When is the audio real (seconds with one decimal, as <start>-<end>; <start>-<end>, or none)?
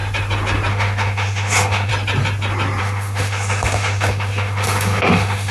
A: 0.0-0.7; 1.9-2.8